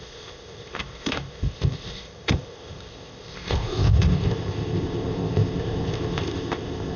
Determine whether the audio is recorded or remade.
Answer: remade